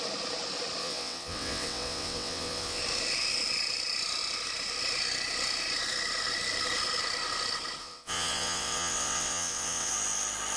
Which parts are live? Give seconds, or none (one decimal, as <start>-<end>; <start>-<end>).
0.0-0.8; 2.8-7.8; 9.9-10.6